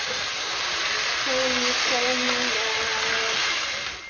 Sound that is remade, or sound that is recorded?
recorded